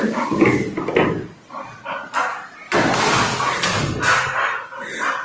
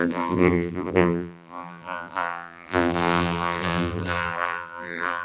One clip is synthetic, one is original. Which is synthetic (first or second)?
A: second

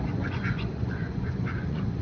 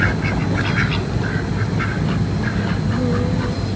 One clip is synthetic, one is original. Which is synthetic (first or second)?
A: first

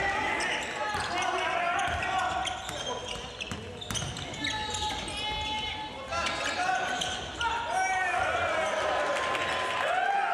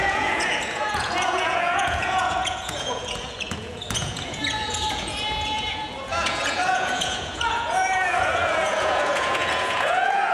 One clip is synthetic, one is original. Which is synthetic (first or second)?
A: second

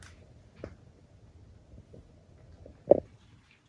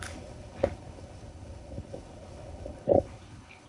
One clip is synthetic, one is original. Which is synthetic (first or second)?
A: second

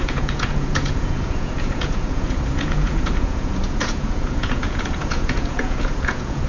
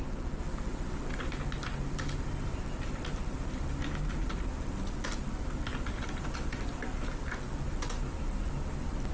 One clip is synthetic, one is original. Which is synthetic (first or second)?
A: first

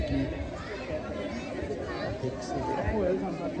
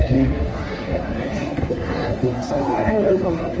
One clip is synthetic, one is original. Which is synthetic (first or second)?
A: second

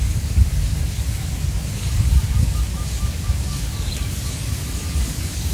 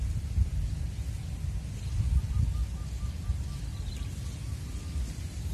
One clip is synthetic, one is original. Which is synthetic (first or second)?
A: first